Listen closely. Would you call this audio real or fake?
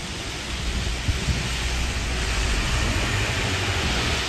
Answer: fake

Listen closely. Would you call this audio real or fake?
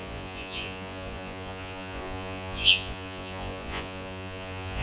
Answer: fake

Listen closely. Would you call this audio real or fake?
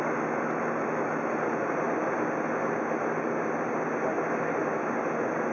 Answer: real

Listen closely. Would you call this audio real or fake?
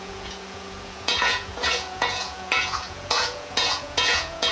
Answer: fake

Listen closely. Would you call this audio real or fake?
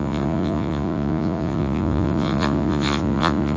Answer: fake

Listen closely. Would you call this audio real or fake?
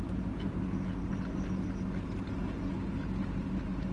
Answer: real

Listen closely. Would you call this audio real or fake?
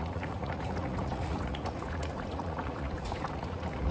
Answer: fake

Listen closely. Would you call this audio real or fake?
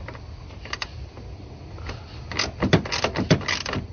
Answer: real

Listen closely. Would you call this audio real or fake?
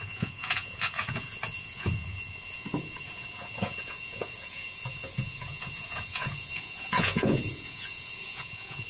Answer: fake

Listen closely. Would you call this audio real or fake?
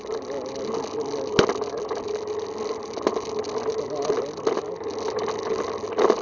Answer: real